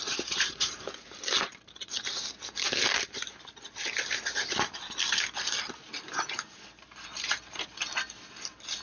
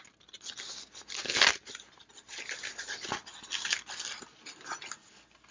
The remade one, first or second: first